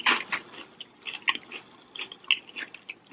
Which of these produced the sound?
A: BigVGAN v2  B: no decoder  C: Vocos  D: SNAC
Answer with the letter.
B